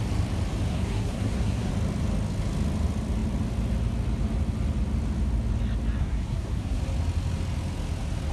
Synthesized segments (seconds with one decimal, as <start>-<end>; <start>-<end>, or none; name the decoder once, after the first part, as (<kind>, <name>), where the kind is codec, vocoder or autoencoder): 0.7-1.7 (codec, SNAC); 6.0-6.8